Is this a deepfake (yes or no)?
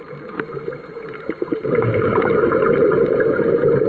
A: yes